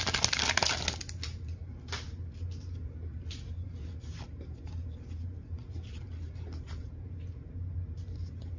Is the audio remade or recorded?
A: recorded